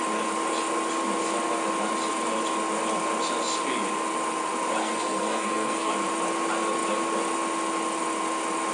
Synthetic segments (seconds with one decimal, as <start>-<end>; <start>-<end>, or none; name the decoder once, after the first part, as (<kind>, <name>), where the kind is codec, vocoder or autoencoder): 4.8-5.9 (codec, SNAC)